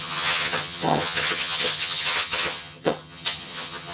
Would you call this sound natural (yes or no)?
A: no